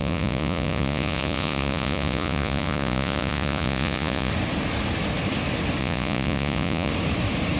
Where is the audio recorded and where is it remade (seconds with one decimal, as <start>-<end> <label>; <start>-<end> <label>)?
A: 0.0-4.3 remade; 4.3-5.8 recorded; 5.8-6.9 remade; 6.9-7.6 recorded